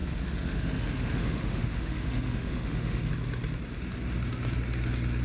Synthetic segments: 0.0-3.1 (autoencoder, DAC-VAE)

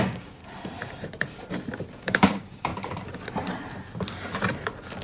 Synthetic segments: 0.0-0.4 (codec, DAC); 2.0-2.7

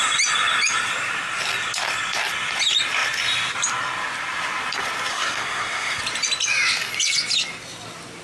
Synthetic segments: 5.1-6.0 (codec, SNAC)

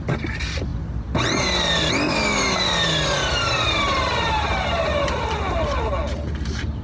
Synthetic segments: none